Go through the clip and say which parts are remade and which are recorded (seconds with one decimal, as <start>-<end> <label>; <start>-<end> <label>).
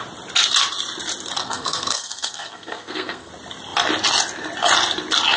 0.0-1.4 recorded; 1.4-3.3 remade; 3.3-5.4 recorded